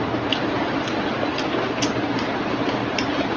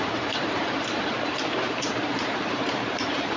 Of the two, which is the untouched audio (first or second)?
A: first